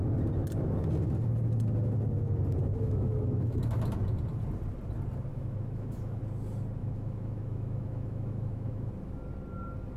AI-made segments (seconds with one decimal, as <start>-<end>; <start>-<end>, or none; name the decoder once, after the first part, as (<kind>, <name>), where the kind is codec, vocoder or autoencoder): 2.7-3.8 (autoencoder, DAC-VAE); 5.3-6.2; 6.8-8.9